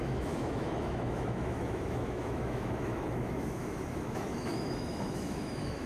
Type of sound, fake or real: fake